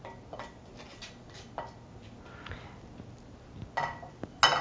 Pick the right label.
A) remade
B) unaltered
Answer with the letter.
B